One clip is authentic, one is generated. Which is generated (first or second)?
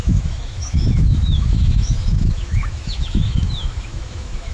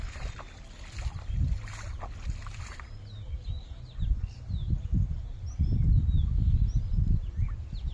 first